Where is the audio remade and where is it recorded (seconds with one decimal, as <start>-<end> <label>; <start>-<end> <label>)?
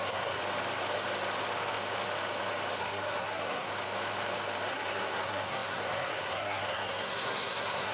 0.0-0.4 remade; 0.4-2.8 recorded; 2.8-3.7 remade; 3.7-4.7 recorded; 4.7-7.9 remade